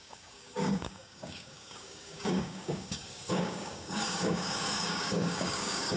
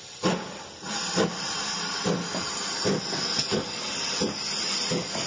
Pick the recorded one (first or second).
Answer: second